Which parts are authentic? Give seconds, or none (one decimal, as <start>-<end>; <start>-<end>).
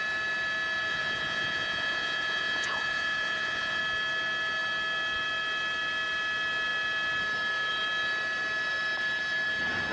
0.0-0.9; 3.8-9.9